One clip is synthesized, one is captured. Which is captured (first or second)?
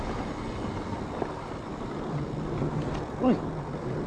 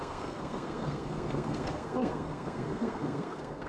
first